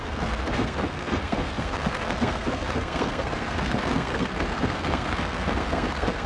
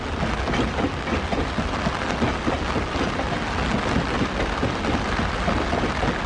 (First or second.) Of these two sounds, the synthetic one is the first